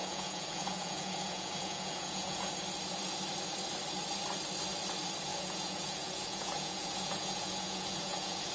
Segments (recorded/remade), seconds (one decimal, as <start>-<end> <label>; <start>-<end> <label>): 0.0-2.5 remade; 2.5-5.3 recorded; 5.3-8.5 remade